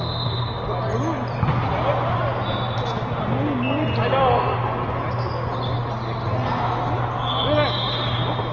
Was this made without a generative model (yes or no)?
yes